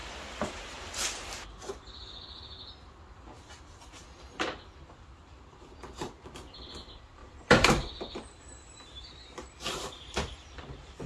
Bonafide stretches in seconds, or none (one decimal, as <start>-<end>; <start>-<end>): 0.0-7.2; 10.6-11.1